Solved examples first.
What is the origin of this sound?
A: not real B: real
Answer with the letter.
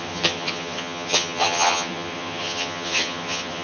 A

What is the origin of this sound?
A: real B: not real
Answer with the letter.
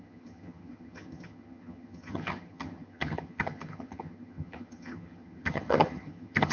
B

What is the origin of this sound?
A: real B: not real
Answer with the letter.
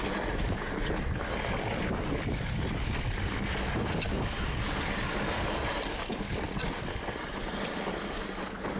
A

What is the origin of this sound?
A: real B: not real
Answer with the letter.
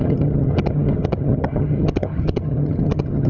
B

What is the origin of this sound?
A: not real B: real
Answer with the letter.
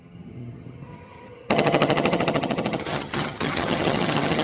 A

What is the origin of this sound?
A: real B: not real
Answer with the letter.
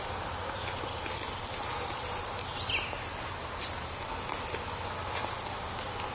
A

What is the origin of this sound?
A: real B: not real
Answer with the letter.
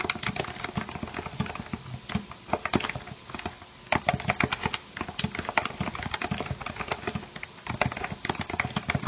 A